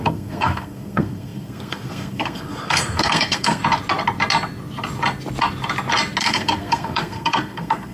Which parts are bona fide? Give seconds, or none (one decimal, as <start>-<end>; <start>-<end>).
3.6-6.2

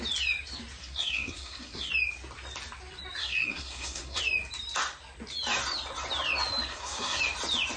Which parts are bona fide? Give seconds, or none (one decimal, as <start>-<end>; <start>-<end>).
0.0-0.8; 1.9-3.2; 4.2-6.7; 7.2-7.8

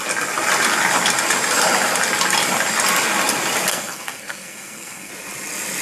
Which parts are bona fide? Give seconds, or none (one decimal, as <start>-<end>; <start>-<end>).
0.0-3.7; 5.1-5.8

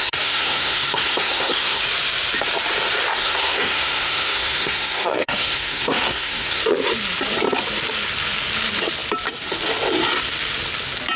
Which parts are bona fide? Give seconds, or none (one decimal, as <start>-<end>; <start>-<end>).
1.8-3.1; 6.6-11.2

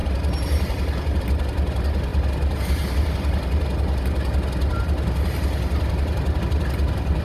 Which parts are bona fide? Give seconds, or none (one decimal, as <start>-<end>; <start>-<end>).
0.0-7.2

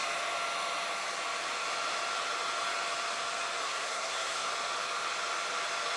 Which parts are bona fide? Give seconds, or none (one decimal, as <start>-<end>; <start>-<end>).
0.0-3.6; 4.5-6.0

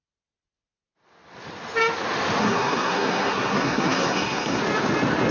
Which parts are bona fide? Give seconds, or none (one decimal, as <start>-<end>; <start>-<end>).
0.0-2.4; 4.6-5.3

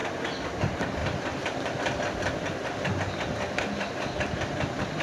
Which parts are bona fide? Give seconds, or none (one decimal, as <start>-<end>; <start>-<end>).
0.0-5.0